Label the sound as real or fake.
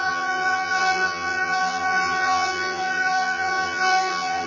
fake